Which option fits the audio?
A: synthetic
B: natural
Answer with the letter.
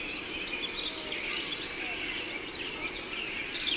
B